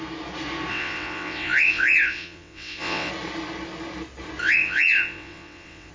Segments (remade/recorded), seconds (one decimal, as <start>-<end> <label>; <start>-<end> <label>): 0.0-0.7 recorded; 0.7-3.1 remade; 3.1-4.4 recorded; 4.4-5.9 remade